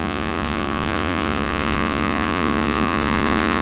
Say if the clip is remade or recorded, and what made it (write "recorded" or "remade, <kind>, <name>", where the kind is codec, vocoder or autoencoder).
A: remade, vocoder, Vocos